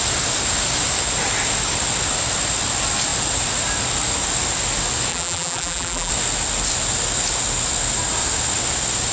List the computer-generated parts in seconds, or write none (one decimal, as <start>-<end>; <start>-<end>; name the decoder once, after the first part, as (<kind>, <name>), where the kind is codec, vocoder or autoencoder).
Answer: 5.1-6.1 (vocoder, BigVGAN v2)